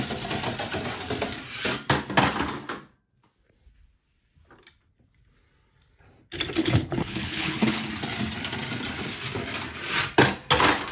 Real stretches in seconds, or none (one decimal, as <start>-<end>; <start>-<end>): 0.0-6.6; 7.9-10.9